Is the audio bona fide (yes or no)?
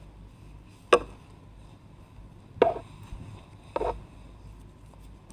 yes